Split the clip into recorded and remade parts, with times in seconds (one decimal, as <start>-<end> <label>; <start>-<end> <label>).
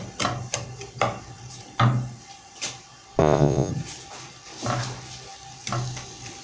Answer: 0.0-3.2 recorded; 3.2-3.7 remade; 3.7-6.4 recorded